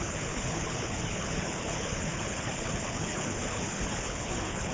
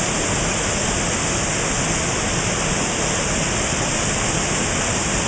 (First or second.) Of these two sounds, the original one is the second